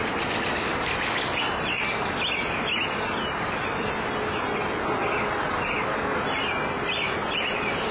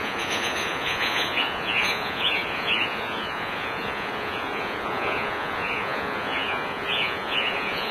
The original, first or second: first